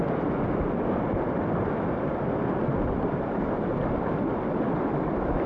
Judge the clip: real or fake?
real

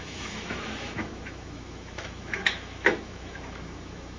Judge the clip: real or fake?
fake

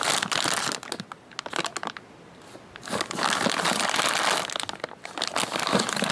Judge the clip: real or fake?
real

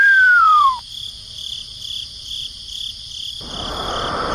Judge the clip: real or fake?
fake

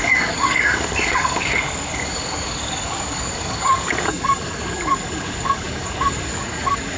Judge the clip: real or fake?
fake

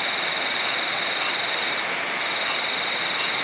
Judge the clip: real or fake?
real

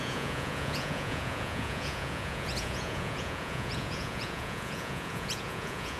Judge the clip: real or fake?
fake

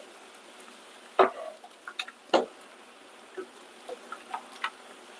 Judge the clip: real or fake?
real